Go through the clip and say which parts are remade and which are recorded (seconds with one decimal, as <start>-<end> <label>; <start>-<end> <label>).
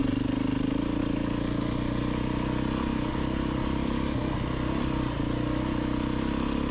0.0-6.7 recorded